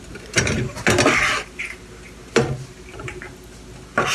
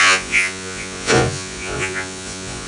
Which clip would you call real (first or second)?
first